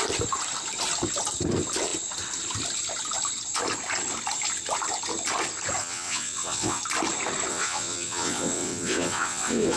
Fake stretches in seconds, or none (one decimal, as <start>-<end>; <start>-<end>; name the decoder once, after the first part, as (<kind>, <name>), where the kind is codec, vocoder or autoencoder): 5.8-6.8 (vocoder, WaveNeXt); 7.5-9.8